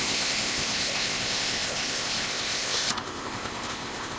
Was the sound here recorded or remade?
remade